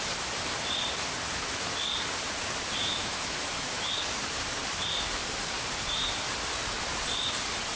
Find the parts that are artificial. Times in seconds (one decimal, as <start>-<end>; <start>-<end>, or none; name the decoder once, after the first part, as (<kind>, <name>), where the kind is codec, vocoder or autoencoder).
2.8-3.9 (autoencoder, DAC-VAE)